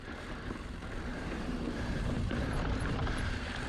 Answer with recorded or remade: remade